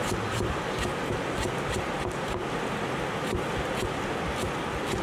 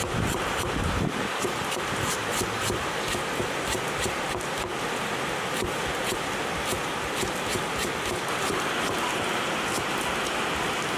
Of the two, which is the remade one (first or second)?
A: second